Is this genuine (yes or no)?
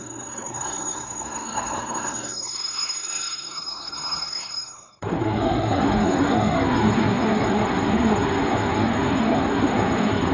no